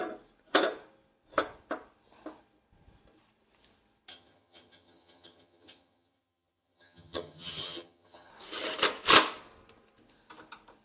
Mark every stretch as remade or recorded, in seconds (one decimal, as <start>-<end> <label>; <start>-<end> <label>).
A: 0.0-4.1 recorded; 4.1-8.3 remade; 8.3-10.8 recorded